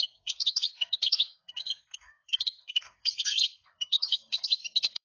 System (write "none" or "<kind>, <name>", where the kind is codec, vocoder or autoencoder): codec, SNAC